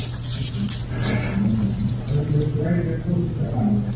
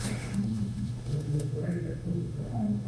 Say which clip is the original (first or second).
first